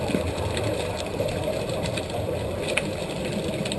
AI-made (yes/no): no